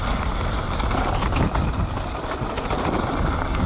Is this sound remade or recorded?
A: recorded